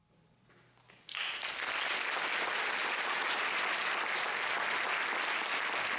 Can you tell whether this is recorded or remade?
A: recorded